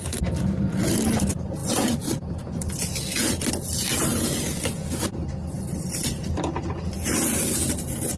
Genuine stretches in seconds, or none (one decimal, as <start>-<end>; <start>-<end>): 0.0-8.2